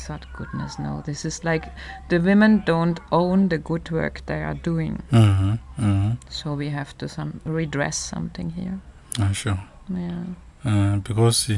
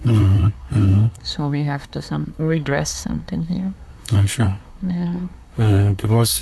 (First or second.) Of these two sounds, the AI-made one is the second